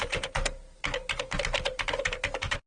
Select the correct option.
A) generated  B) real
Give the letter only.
B